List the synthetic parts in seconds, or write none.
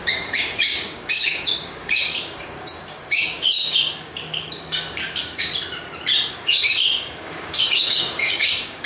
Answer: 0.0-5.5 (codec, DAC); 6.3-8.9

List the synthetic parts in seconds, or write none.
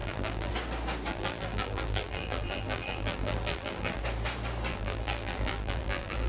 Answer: 0.0-0.5 (vocoder, BigVGAN v2); 1.1-4.0; 4.7-6.3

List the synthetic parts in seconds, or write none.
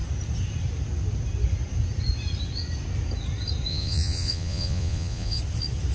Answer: 3.7-5.4 (vocoder, Vocos)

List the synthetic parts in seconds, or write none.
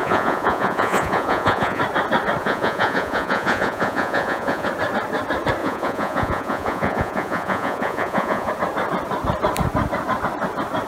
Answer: 0.0-1.8 (vocoder, Vocos); 2.4-4.7; 5.6-8.5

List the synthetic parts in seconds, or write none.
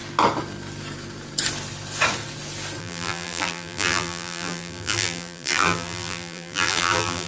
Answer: 2.8-7.3 (vocoder, BigVGAN v2)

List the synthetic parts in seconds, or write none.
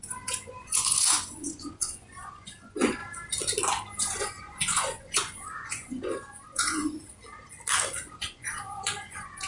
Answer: 0.0-3.0 (vocoder, Vocos); 4.0-7.0; 8.1-9.5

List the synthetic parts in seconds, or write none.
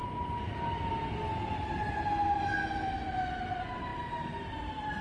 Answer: none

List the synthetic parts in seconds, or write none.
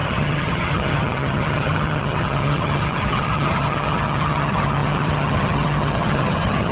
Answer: 0.0-6.7 (vocoder, HiFi-GAN)